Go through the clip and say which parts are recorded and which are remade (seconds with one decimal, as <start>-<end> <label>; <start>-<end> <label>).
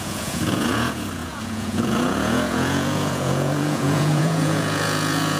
0.0-5.4 remade